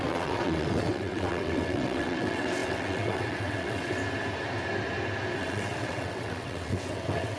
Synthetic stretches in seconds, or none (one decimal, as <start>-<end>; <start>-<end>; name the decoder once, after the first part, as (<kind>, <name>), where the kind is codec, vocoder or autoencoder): 0.0-4.0 (vocoder, WaveNeXt); 5.4-7.4